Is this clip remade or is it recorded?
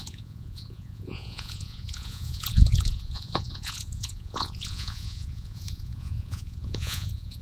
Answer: remade